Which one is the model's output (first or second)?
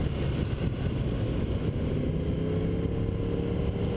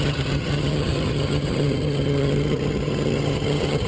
second